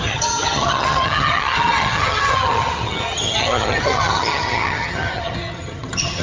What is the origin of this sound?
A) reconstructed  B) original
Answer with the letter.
A